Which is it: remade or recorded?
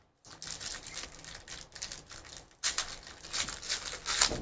recorded